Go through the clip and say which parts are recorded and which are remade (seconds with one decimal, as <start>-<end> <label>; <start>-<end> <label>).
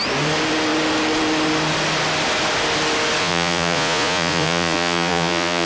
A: 0.0-3.2 recorded; 3.2-5.7 remade